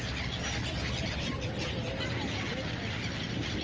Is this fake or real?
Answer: real